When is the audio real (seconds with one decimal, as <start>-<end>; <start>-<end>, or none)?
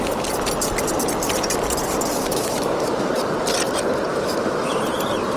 0.0-2.3; 3.1-4.1; 4.8-5.4